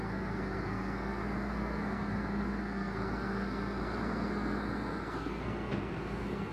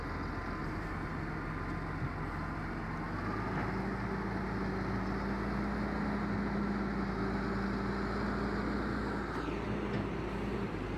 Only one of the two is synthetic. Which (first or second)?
first